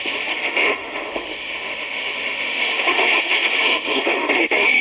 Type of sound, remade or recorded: remade